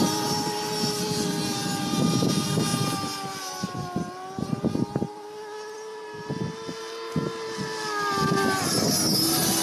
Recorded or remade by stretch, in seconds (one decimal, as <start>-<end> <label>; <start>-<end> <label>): 0.0-9.6 recorded

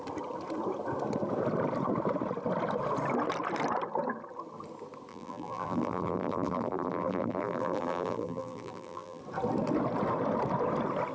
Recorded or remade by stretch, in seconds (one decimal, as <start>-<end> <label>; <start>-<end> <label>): 0.0-5.1 recorded; 5.1-9.2 remade; 9.2-11.1 recorded

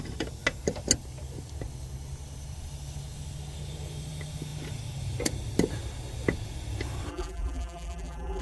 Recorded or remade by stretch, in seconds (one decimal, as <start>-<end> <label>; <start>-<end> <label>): 0.0-7.1 recorded; 7.1-8.4 remade

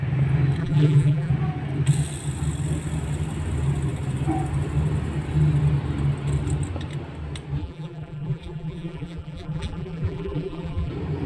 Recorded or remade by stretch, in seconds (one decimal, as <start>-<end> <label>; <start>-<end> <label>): 0.0-0.6 recorded; 0.6-1.3 remade; 1.3-7.6 recorded; 7.6-10.9 remade; 10.9-11.3 recorded

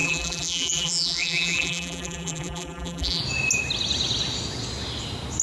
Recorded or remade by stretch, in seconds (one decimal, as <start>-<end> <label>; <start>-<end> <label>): 0.0-3.2 remade; 3.2-5.4 recorded